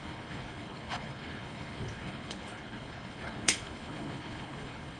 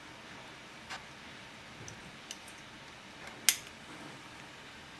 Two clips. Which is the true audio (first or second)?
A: second